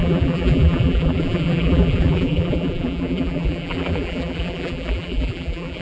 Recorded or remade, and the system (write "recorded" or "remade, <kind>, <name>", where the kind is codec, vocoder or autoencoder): remade, vocoder, BigVGAN v2